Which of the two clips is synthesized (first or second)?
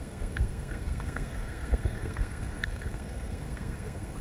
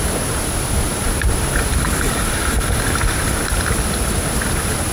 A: first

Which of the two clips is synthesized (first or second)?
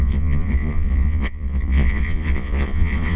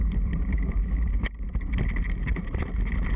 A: first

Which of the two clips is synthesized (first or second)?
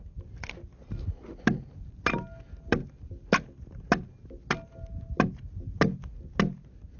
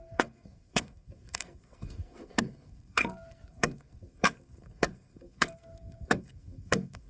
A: second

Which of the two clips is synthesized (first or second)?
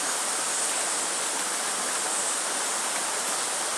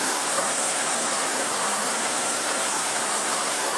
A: second